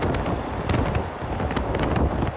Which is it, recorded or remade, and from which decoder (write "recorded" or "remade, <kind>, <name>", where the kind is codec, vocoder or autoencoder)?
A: recorded